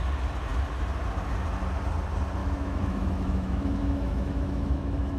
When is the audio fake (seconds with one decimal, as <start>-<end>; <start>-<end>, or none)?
2.4-5.2